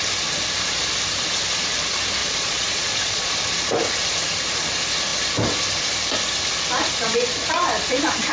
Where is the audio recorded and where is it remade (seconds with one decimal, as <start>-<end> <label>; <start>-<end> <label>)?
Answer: 0.0-2.2 recorded; 2.2-3.3 remade; 3.3-8.3 recorded